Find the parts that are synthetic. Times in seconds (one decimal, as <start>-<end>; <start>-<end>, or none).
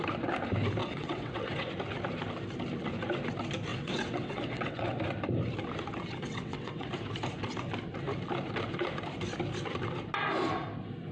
0.8-1.7; 3.7-5.0; 6.1-6.9